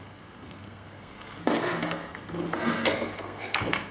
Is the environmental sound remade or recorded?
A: remade